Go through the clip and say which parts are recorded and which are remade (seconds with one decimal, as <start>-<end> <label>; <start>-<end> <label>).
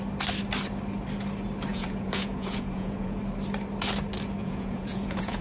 0.0-1.7 recorded; 1.7-3.2 remade; 3.2-4.4 recorded; 4.4-5.4 remade